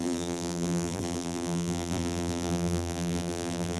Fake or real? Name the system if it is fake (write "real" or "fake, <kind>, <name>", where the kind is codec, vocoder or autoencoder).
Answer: fake, vocoder, BigVGAN v2